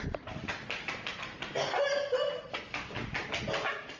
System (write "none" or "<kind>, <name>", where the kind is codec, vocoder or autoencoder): none